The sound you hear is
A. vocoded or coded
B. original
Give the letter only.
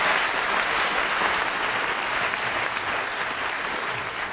B